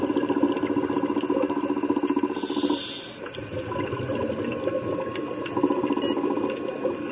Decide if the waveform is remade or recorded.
recorded